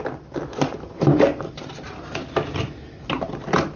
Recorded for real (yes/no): yes